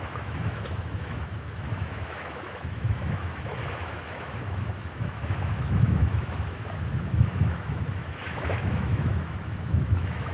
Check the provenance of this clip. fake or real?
fake